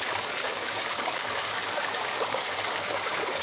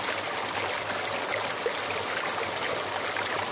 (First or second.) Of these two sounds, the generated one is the first